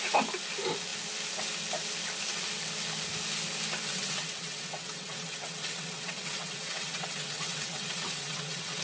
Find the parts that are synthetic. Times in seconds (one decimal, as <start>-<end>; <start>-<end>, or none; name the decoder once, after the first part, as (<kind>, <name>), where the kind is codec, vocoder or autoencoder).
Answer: 3.9-8.8 (vocoder, WaveNeXt)